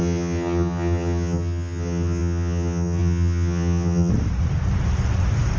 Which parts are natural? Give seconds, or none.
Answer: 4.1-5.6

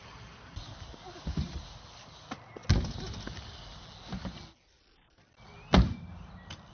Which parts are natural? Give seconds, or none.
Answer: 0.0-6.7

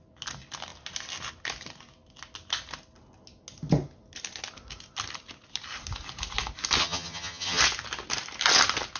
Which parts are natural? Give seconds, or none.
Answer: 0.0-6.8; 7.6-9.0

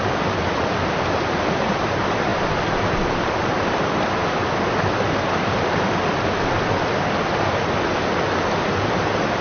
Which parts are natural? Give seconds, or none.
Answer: 0.0-9.4

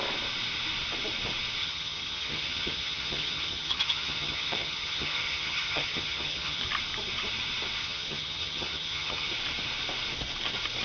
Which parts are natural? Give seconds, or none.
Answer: 0.0-1.6; 6.6-7.8; 9.3-10.8

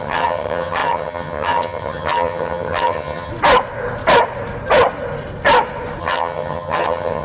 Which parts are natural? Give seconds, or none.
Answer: 3.3-6.0

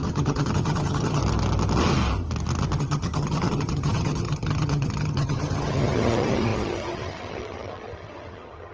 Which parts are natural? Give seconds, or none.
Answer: 1.2-2.8

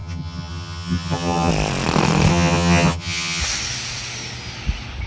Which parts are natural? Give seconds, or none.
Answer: 1.5-2.3; 3.4-5.1